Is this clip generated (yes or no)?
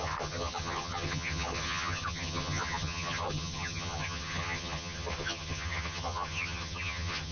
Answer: yes